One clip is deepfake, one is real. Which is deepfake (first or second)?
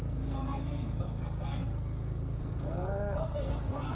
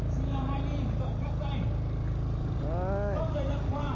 first